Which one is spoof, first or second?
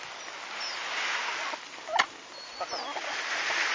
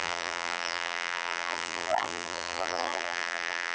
second